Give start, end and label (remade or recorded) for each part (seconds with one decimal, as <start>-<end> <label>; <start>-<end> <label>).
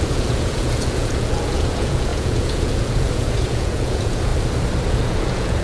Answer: 0.0-4.3 remade; 4.3-4.9 recorded; 4.9-5.6 remade